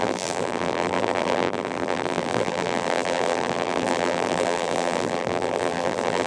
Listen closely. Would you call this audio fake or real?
fake